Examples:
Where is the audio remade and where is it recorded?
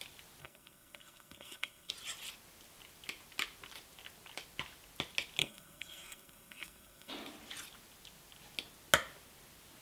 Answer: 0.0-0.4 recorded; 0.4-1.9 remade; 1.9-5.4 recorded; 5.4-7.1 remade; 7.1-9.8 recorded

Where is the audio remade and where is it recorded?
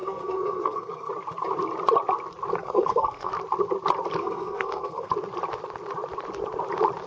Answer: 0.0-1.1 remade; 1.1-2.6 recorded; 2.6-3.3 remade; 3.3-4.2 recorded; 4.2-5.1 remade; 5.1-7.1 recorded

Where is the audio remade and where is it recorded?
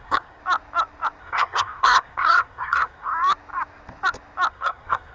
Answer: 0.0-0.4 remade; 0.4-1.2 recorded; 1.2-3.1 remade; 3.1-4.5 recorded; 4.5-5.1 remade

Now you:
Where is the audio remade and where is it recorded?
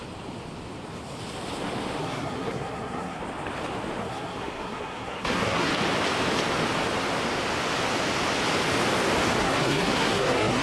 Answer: 0.0-2.0 recorded; 2.0-3.2 remade; 3.2-4.0 recorded; 4.0-5.7 remade; 5.7-9.4 recorded; 9.4-10.6 remade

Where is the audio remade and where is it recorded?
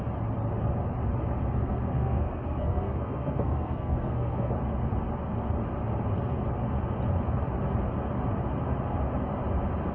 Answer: 0.0-1.6 recorded; 1.6-4.5 remade; 4.5-9.9 recorded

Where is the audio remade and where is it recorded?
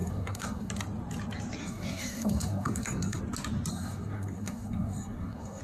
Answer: 0.0-0.7 remade; 0.7-1.6 recorded; 1.6-3.2 remade; 3.2-3.7 recorded; 3.7-5.6 remade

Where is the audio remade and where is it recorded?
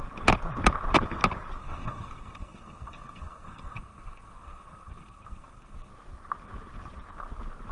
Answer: 0.0-1.6 recorded; 1.6-5.9 remade; 5.9-7.7 recorded